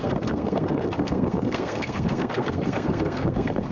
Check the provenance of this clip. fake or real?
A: fake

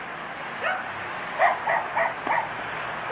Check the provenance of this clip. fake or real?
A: real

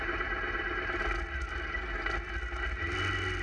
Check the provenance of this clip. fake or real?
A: real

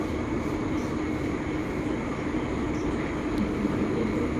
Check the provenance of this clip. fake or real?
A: real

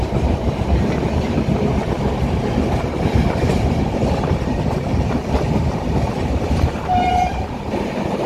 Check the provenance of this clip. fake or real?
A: fake